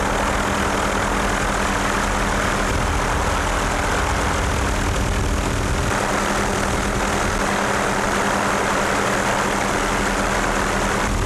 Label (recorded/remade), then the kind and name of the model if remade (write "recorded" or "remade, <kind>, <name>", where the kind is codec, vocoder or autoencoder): recorded